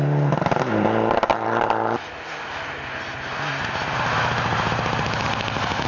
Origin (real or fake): real